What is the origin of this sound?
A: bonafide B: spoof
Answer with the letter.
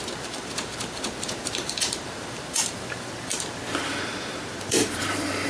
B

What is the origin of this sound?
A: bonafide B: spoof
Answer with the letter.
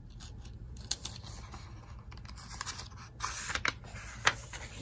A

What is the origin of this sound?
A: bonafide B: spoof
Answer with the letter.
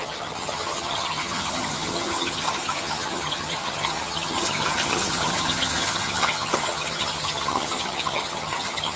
B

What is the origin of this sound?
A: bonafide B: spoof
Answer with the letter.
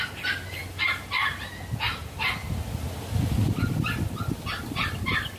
A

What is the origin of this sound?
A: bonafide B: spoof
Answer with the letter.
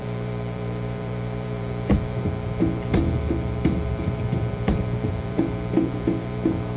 B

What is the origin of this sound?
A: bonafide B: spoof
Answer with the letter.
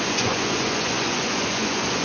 B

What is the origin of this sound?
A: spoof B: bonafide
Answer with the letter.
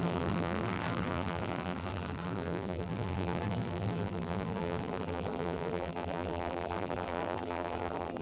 A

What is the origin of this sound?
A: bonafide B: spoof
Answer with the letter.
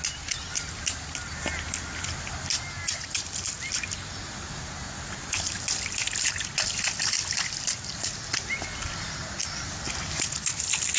A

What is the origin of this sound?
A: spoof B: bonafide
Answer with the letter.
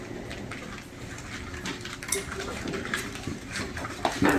B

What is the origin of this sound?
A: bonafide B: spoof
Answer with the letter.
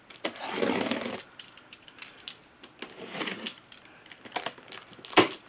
A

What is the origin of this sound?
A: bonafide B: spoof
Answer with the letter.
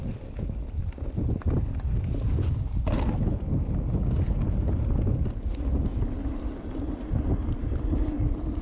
A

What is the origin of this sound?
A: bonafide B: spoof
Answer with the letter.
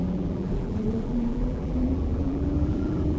B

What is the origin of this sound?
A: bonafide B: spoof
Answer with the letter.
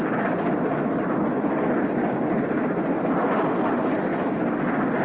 A